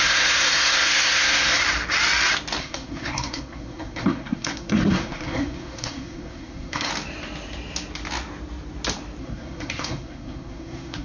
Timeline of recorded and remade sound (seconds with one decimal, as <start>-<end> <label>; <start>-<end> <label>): 0.0-1.6 remade; 1.6-2.6 recorded; 2.6-6.9 remade; 6.9-9.2 recorded; 9.2-11.0 remade